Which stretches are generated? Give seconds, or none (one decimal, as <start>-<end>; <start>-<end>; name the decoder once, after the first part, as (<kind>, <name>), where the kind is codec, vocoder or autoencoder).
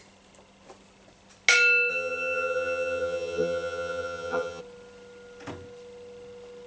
1.9-4.6 (vocoder, HiFi-GAN)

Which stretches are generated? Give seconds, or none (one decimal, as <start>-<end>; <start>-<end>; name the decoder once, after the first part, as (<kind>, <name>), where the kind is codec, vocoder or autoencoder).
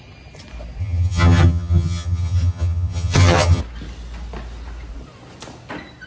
0.8-3.6 (vocoder, HiFi-GAN)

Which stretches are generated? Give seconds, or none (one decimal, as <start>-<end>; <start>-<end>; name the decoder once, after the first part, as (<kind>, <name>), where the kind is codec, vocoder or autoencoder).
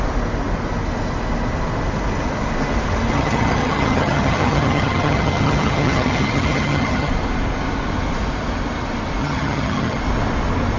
3.1-7.1 (vocoder, HiFi-GAN); 9.2-10.0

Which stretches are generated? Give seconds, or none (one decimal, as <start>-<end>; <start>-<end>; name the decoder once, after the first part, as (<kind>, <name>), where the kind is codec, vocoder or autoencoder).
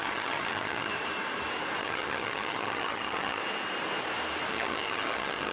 0.0-0.9 (vocoder, HiFi-GAN); 1.8-3.4; 4.5-5.5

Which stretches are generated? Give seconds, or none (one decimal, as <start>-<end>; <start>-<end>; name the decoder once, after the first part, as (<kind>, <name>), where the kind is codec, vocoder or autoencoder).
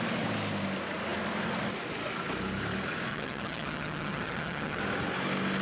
3.1-4.8 (vocoder, HiFi-GAN)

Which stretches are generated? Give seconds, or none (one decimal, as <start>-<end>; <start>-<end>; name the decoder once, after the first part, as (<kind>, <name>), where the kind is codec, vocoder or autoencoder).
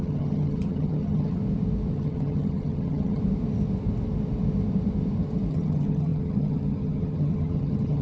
0.0-1.4 (vocoder, HiFi-GAN); 1.9-3.2; 5.5-8.0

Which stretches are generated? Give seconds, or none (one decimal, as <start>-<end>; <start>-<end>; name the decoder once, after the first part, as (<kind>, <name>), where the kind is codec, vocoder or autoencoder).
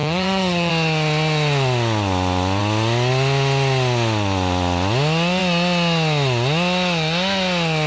0.0-0.7 (vocoder, HiFi-GAN)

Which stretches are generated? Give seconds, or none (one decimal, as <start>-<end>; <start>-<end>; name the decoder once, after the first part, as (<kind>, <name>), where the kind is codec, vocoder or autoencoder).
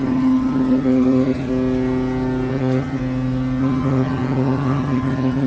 0.0-1.5 (vocoder, HiFi-GAN); 2.5-3.0; 3.6-5.5